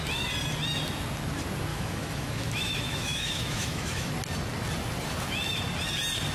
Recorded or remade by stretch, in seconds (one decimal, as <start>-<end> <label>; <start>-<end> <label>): 0.0-1.7 recorded; 1.7-4.1 remade; 4.1-6.3 recorded